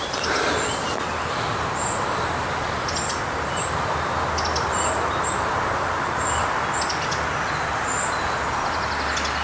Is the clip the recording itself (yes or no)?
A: yes